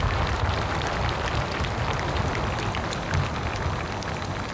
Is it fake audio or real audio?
real